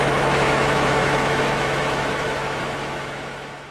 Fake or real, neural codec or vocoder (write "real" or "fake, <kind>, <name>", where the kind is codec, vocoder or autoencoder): fake, autoencoder, DAC-VAE